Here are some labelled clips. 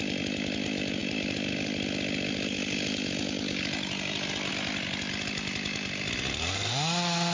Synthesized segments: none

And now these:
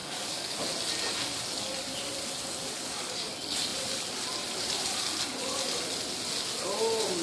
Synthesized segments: 0.0-0.6 (codec, DAC); 2.8-3.3